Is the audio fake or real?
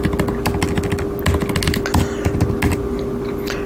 real